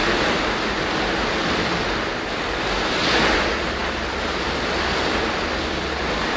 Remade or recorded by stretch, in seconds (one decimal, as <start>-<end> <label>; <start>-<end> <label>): 0.0-6.4 recorded